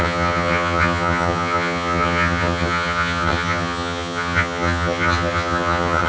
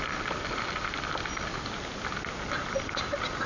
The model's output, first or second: first